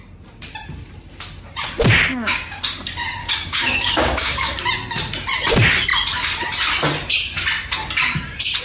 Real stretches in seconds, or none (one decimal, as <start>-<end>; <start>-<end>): 0.0-2.1; 2.6-3.2; 4.6-8.6